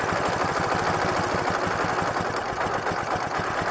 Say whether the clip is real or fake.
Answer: real